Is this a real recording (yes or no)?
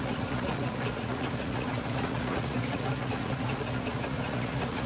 no